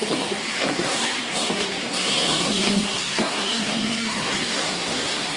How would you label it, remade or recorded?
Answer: remade